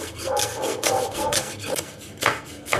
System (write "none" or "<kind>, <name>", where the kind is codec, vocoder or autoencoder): codec, SNAC